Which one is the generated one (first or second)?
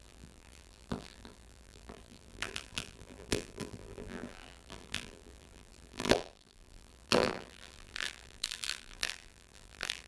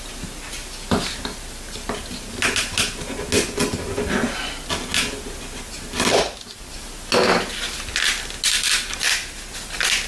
first